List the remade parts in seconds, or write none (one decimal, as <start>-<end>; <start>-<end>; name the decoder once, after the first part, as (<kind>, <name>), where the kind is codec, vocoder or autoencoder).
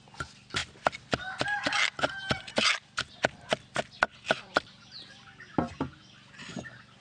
none